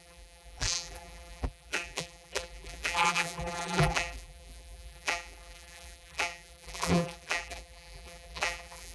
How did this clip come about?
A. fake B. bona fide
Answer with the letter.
A